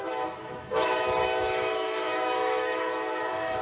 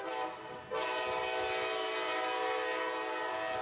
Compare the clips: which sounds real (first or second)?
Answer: second